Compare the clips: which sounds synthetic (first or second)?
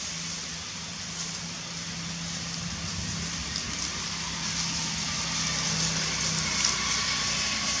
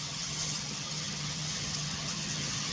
second